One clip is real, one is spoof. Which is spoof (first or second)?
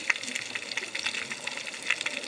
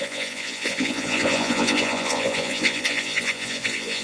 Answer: second